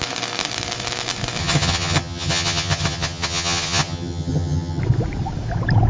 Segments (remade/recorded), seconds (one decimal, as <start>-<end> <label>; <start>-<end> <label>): 0.0-1.4 recorded; 1.4-4.8 remade; 4.8-5.9 recorded